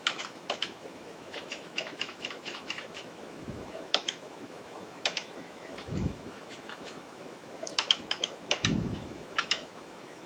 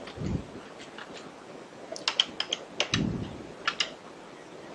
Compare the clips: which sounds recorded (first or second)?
second